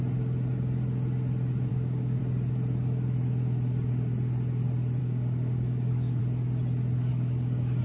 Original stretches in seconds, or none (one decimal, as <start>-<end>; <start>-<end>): 0.0-1.7; 2.2-5.0; 6.2-7.1